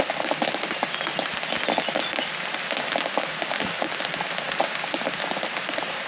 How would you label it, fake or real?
real